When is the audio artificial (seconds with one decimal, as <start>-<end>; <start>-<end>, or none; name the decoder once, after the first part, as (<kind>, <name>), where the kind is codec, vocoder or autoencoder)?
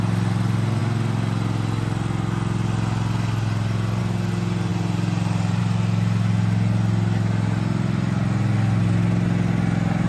4.7-5.6 (vocoder, BigVGAN v2)